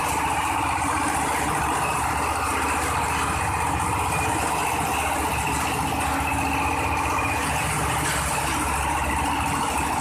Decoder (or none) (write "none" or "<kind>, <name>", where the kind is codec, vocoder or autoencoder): none